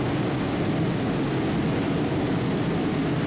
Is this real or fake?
real